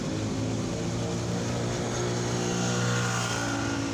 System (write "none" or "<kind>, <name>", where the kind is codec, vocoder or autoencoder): none